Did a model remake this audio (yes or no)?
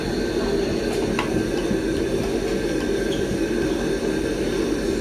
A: no